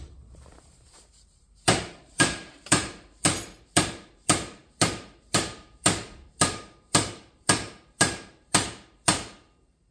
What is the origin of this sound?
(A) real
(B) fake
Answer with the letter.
B